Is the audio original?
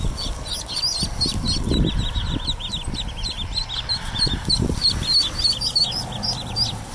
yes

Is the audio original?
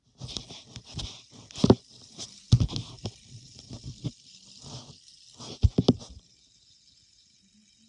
yes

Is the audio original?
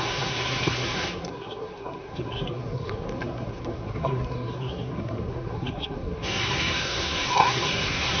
no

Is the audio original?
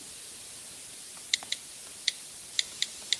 yes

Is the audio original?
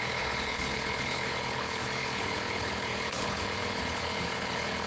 no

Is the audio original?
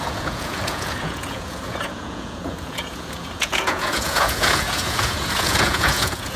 no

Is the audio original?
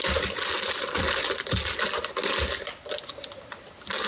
yes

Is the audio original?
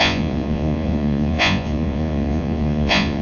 no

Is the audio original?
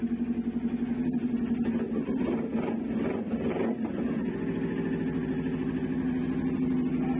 yes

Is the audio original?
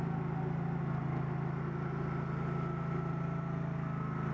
yes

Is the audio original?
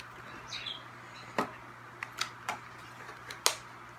yes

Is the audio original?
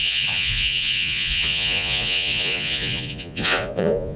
no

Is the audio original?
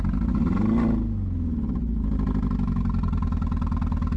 yes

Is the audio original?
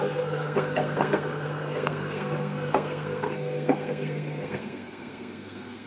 no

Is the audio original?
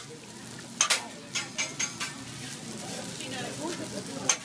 yes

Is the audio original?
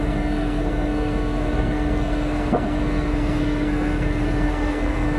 no